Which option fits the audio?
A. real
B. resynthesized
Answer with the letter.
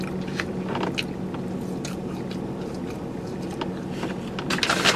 A